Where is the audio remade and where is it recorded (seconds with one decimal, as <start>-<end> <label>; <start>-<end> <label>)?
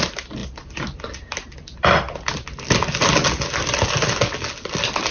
0.0-5.1 recorded